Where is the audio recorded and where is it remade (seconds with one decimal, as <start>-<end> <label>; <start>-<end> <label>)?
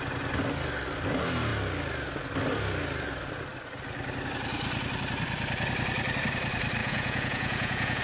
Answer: 0.0-6.8 recorded; 6.8-8.0 remade